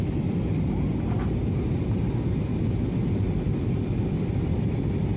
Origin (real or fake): real